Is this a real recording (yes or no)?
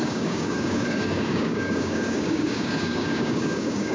no